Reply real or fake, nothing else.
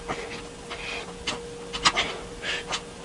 real